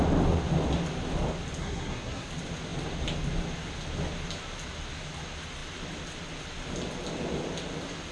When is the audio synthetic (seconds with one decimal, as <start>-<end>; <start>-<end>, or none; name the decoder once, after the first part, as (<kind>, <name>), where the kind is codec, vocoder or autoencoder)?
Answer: 1.6-2.3 (codec, SNAC)